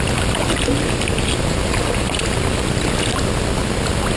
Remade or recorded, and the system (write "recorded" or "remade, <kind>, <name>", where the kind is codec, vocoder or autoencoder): recorded